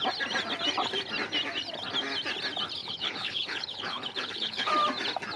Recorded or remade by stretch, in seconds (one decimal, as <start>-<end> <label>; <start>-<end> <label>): 0.0-2.8 recorded; 2.8-4.7 remade; 4.7-5.4 recorded